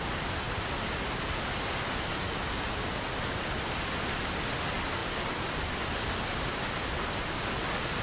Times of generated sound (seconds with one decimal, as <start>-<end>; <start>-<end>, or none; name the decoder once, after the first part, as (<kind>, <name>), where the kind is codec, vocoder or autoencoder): 5.0-5.5 (vocoder, BigVGAN v2)